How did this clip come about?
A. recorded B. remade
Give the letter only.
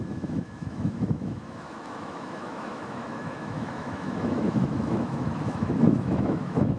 B